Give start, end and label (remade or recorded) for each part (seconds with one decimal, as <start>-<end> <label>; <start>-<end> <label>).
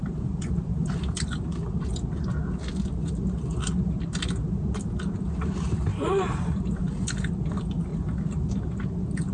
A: 0.0-1.0 remade; 1.0-5.9 recorded; 5.9-6.8 remade; 6.8-7.9 recorded; 7.9-8.5 remade; 8.5-9.3 recorded